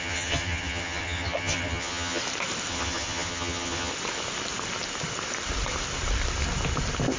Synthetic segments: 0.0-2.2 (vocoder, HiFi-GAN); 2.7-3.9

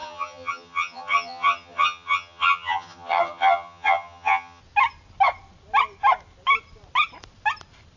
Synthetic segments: 0.0-4.6 (vocoder, HiFi-GAN)